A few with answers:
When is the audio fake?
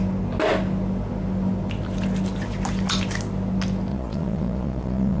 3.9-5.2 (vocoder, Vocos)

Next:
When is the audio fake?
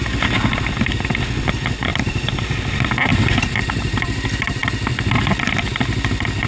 1.9-2.6 (vocoder, BigVGAN v2); 3.1-4.0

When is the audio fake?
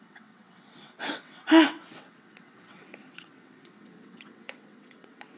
0.0-5.4 (vocoder, WaveNeXt)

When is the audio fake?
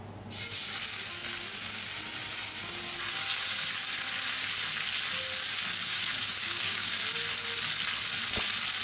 5.8-7.1 (codec, DAC)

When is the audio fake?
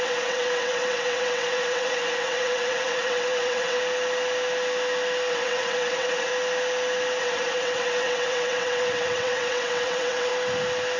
0.0-3.8 (vocoder, WaveNeXt); 5.3-6.3; 7.2-10.3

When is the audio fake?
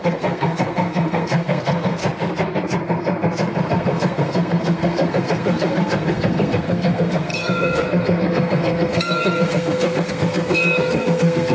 0.0-2.0 (codec, SNAC); 3.7-11.5